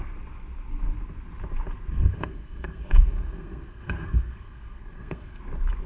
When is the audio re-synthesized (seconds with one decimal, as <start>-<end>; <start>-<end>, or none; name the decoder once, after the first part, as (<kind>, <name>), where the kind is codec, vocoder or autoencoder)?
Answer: 1.9-5.4 (codec, SNAC)